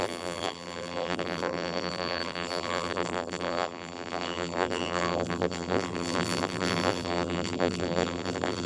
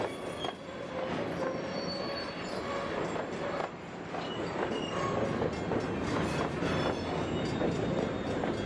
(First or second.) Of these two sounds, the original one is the second